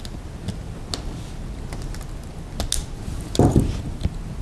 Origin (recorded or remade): recorded